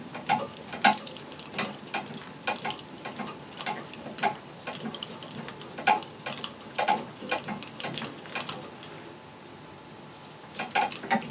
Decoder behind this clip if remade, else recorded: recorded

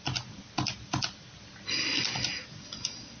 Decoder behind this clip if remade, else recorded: recorded